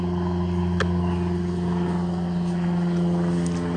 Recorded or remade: recorded